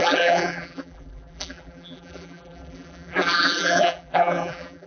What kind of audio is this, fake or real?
fake